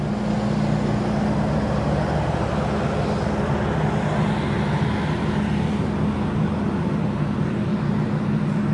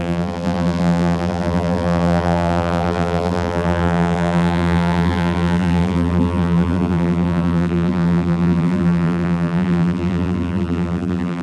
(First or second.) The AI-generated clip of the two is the second